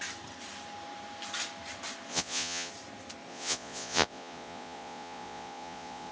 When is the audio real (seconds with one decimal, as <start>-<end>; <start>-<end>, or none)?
0.0-2.1; 2.7-3.3